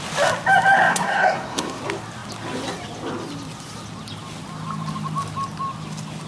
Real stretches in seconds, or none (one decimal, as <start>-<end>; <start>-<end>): 0.0-0.9; 1.8-6.3